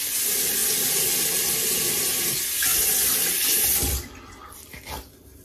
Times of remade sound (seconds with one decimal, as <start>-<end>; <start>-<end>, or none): none